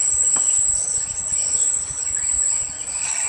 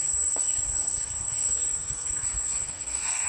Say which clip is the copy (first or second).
second